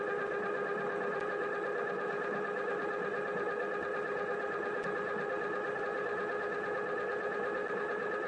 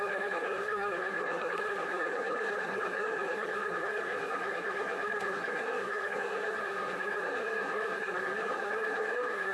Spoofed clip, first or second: second